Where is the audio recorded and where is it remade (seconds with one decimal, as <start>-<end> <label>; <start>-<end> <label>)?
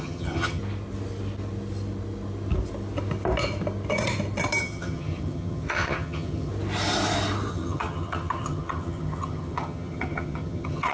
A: 0.0-0.6 remade; 0.6-4.6 recorded; 4.6-6.5 remade; 6.5-7.5 recorded; 7.5-10.9 remade